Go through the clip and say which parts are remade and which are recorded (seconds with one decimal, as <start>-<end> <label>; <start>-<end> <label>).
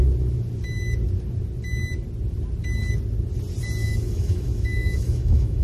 0.0-3.8 recorded; 3.8-5.6 remade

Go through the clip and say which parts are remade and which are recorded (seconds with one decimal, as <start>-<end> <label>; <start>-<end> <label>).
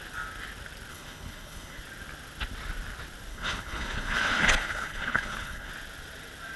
0.0-0.9 recorded; 0.9-1.8 remade; 1.8-3.3 recorded; 3.3-5.7 remade; 5.7-6.6 recorded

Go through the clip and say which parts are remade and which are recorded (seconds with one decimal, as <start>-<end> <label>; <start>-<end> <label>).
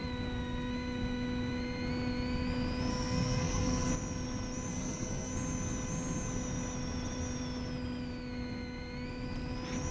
0.0-2.9 recorded; 2.9-3.9 remade; 3.9-4.7 recorded; 4.7-5.3 remade; 5.3-9.9 recorded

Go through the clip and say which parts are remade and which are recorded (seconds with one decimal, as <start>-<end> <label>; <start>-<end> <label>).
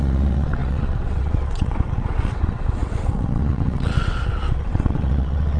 0.0-5.6 remade